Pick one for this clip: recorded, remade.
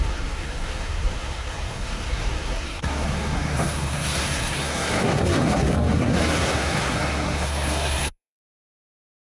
remade